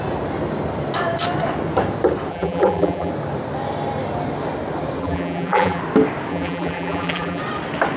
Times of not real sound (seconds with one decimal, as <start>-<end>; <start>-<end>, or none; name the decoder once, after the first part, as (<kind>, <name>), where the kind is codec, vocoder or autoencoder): 2.3-3.1 (vocoder, BigVGAN v2); 5.0-5.8; 6.3-7.4